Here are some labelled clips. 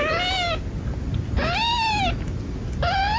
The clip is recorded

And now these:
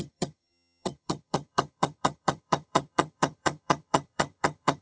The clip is remade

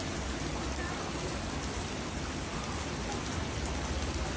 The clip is recorded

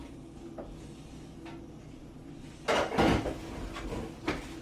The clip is recorded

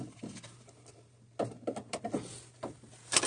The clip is recorded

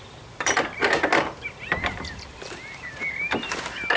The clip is remade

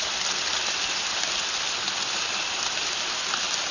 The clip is recorded